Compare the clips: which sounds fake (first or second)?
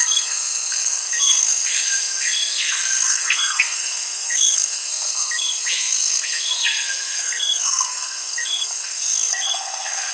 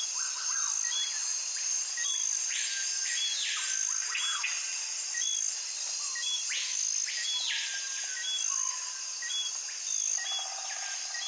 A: first